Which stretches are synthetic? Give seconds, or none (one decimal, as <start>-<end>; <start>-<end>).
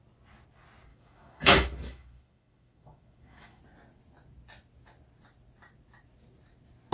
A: 0.9-3.6